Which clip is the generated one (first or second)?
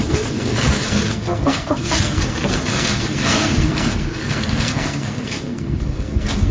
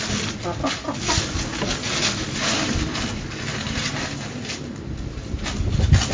first